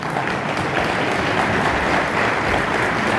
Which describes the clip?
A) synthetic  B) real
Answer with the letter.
B